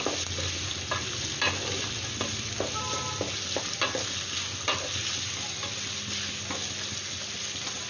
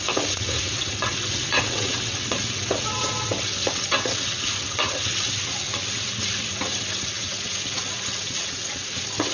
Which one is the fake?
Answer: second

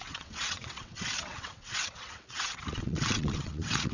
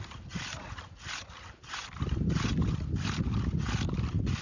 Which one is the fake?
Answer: first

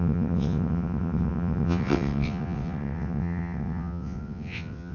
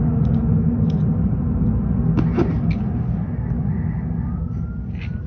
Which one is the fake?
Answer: first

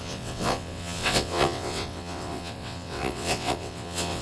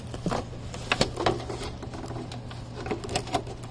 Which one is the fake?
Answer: first